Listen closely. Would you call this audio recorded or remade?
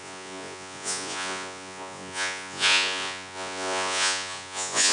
remade